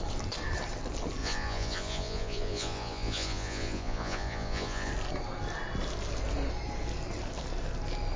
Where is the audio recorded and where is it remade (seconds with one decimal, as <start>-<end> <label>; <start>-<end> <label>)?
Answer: 0.0-1.2 recorded; 1.2-4.9 remade; 4.9-8.2 recorded